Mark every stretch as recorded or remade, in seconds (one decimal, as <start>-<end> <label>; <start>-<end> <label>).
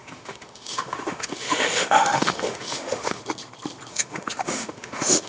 0.0-3.2 remade; 3.2-3.9 recorded; 3.9-5.3 remade